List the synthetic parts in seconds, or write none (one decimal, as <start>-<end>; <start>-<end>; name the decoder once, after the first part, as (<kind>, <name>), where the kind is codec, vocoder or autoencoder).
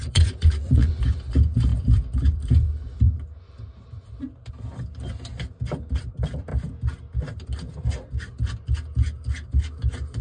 0.0-0.9 (vocoder, Vocos)